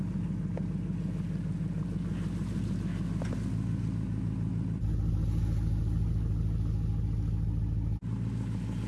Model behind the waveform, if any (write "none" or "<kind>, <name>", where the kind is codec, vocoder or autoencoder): none